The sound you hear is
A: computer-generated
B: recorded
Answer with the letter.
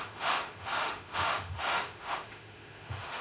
A